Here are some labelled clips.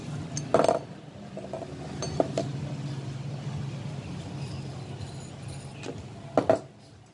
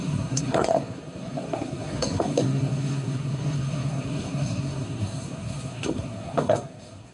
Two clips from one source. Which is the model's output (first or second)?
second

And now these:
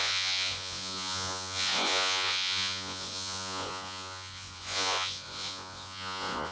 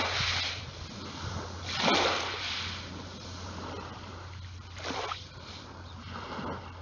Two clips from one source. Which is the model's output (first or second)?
first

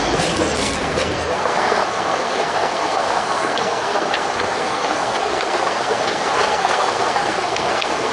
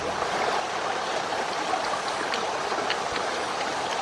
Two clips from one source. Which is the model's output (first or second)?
first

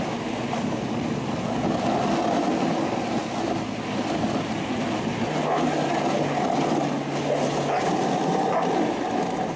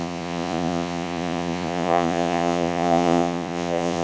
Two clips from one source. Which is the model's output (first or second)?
second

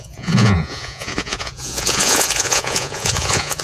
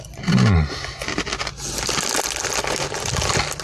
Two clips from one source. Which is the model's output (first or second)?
first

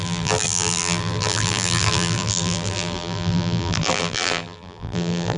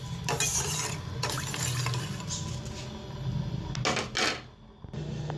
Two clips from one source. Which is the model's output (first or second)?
first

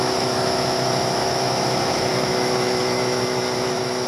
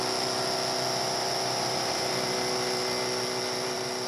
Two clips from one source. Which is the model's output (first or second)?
first